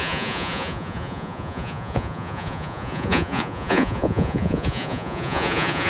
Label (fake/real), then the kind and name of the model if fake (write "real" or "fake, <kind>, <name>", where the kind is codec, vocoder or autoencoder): fake, vocoder, Vocos